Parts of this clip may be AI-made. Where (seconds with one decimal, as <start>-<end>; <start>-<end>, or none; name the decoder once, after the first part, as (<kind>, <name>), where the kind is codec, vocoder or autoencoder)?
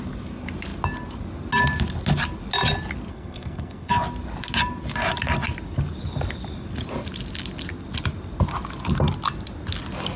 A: 3.1-3.9 (codec, SNAC)